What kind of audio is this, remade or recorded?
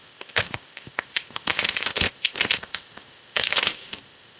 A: remade